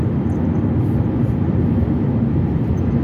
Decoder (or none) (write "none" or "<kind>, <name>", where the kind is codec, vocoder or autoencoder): none